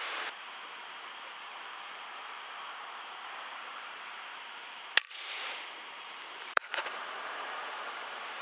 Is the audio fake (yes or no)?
yes